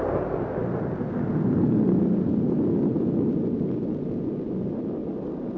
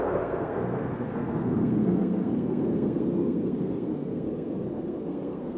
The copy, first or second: second